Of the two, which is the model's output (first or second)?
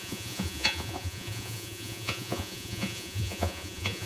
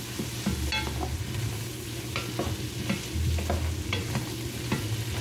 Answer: first